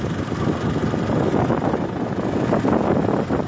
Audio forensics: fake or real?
real